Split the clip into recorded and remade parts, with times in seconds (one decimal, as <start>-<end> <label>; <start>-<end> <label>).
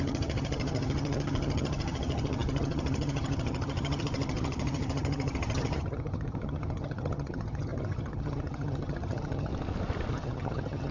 0.0-9.5 remade; 9.5-10.1 recorded; 10.1-10.9 remade